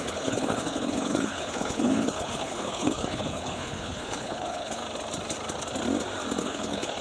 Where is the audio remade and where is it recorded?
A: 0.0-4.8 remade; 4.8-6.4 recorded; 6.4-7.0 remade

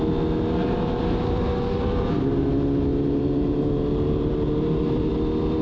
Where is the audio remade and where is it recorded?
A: 0.0-0.6 recorded; 0.6-2.5 remade; 2.5-2.9 recorded; 2.9-5.1 remade; 5.1-5.6 recorded

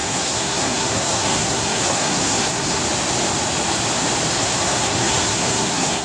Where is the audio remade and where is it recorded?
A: 0.0-2.8 remade; 2.8-4.3 recorded; 4.3-6.0 remade